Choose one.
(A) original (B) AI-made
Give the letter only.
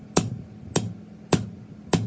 A